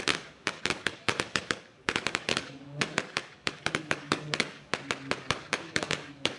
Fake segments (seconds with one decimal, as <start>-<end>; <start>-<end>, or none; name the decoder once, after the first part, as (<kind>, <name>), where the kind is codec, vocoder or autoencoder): 0.0-4.7 (codec, DAC); 5.2-6.4